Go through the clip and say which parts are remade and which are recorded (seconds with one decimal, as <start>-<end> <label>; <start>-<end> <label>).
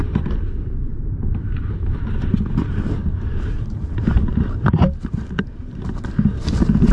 0.0-6.9 remade